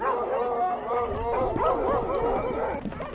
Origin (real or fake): real